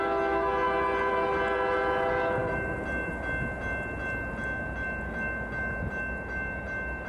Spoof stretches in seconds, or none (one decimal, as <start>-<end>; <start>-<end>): 2.4-3.1